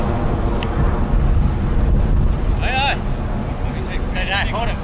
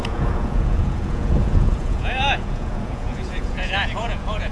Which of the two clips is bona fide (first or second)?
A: first